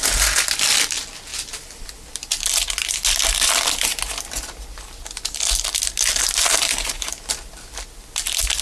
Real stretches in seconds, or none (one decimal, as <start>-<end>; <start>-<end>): 0.0-8.6